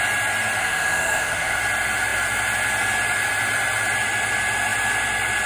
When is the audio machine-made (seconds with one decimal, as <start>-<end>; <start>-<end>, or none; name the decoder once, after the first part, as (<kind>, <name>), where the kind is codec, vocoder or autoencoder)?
0.6-1.6 (autoencoder, DAC-VAE)